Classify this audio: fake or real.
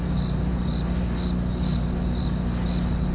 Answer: real